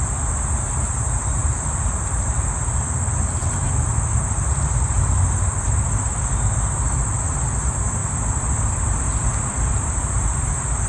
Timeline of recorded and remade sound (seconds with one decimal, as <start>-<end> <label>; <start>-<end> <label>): 0.0-8.0 recorded; 8.0-10.9 remade